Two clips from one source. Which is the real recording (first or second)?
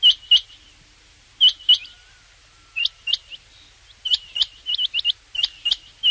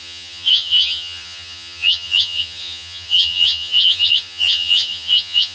first